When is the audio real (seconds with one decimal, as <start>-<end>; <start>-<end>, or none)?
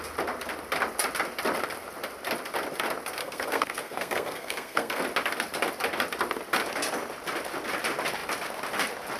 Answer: 0.0-3.2; 5.0-9.2